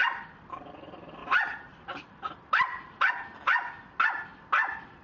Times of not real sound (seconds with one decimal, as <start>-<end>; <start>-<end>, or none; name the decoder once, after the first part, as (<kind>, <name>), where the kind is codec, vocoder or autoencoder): 1.2-3.1 (vocoder, BigVGAN v2)